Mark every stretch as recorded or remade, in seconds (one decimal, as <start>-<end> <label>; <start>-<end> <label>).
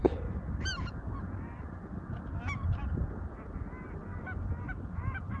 0.0-5.4 recorded